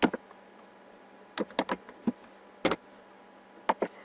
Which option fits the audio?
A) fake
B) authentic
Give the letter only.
B